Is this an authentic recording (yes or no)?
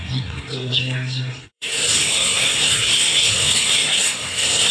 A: no